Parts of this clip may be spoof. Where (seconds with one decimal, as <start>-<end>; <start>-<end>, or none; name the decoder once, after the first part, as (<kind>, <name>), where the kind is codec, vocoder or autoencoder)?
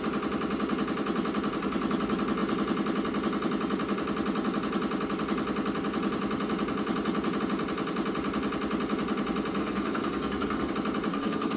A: 9.6-10.7 (codec, SNAC); 11.1-11.6